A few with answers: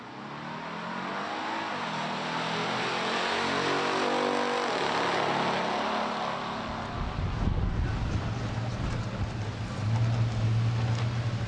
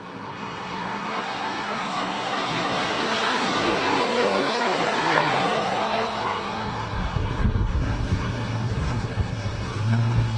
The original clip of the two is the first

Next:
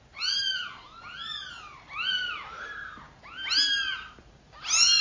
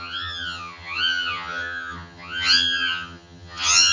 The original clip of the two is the first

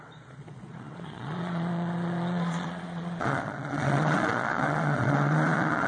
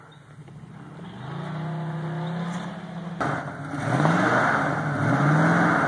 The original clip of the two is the second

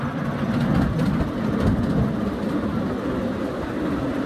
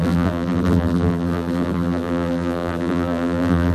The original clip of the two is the first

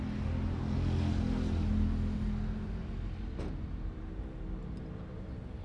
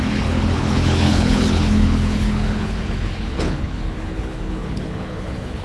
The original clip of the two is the first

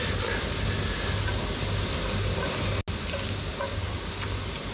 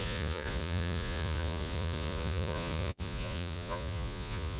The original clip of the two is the first